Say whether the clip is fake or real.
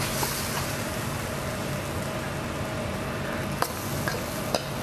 real